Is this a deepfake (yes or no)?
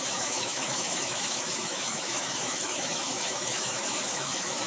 yes